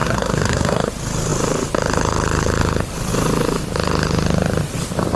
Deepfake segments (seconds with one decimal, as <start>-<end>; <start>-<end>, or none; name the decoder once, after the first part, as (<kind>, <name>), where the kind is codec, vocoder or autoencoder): 0.0-0.9 (codec, SNAC)